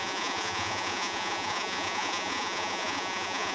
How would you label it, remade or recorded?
remade